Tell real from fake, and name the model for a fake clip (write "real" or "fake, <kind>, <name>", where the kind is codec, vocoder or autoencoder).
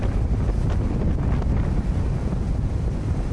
real